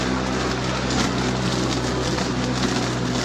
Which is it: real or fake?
real